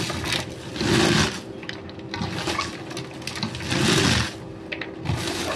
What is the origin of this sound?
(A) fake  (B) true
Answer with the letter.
B